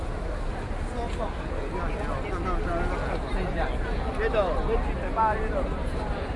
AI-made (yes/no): no